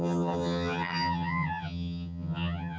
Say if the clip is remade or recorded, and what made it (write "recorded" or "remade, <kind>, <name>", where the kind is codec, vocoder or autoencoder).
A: remade, vocoder, HiFi-GAN